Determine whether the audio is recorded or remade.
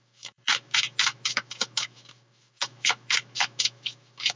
remade